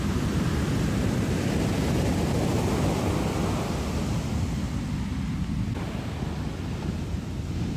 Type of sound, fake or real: real